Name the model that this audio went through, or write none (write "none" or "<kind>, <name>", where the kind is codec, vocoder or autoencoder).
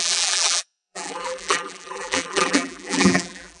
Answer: vocoder, BigVGAN v2